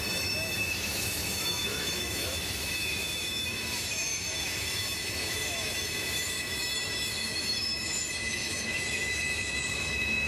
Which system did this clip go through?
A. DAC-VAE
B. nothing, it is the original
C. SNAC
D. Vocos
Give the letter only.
A